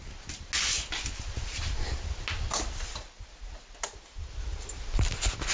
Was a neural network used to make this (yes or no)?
no